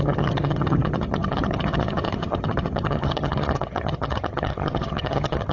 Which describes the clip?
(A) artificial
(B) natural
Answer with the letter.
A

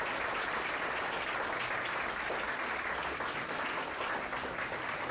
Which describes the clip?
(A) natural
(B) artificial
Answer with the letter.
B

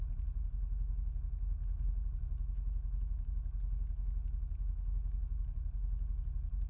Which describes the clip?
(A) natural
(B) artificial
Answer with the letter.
A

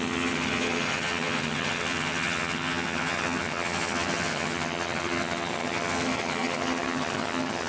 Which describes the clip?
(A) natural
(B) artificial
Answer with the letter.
B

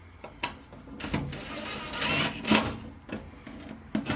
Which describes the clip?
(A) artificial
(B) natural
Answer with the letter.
B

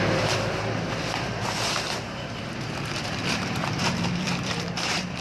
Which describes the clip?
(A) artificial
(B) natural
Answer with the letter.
A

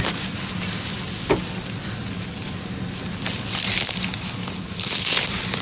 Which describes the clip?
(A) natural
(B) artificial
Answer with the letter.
A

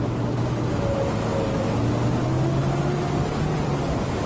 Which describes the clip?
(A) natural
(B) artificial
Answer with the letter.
A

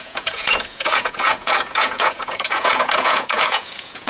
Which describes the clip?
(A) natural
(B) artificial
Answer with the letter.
B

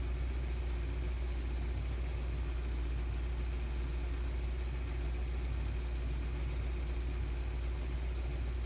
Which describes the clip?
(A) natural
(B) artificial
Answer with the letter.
A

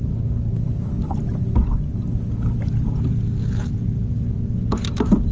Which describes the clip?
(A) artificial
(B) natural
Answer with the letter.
B